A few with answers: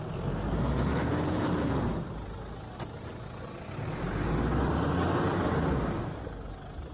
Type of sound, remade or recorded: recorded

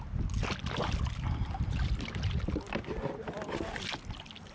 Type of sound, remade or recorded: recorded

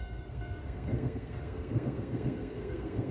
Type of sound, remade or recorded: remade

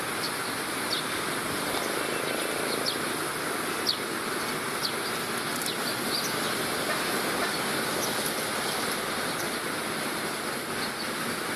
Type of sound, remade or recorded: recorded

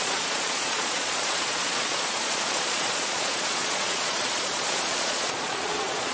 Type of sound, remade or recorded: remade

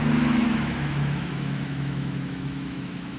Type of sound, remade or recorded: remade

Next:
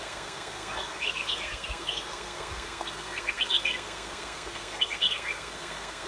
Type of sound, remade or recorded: remade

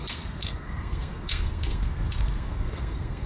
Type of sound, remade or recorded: remade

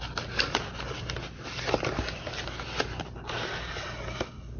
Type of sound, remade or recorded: recorded